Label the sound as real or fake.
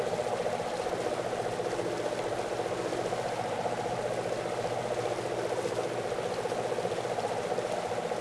real